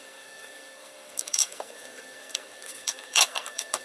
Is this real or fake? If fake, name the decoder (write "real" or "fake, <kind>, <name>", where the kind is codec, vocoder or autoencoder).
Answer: fake, codec, SNAC